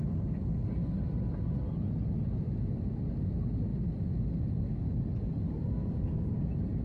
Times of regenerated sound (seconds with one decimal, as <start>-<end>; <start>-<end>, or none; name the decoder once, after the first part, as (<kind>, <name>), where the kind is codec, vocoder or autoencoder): none